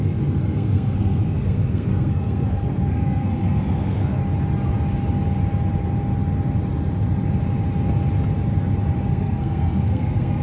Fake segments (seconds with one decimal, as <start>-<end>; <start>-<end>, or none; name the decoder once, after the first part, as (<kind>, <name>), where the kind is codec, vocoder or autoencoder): 0.0-4.2 (codec, SNAC); 9.1-10.4